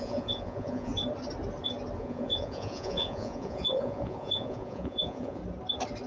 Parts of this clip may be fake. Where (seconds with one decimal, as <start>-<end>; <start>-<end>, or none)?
0.0-0.9; 2.0-5.4